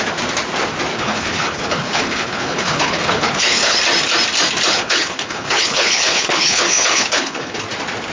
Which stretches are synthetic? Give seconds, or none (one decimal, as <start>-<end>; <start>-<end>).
0.9-3.8; 4.7-7.6